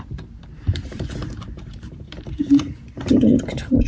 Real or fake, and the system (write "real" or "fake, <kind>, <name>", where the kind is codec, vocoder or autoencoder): fake, vocoder, BigVGAN v2